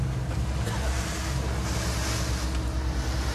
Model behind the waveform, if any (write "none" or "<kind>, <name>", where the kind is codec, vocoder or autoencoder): none